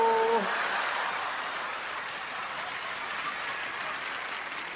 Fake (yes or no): no